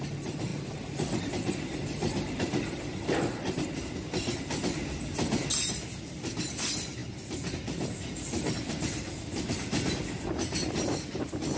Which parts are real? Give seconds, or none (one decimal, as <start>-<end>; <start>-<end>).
0.0-11.6